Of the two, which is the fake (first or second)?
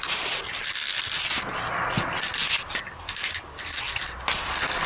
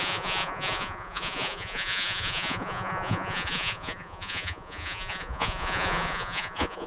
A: second